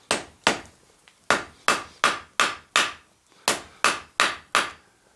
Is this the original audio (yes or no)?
yes